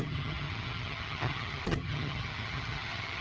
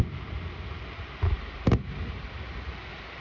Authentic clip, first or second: second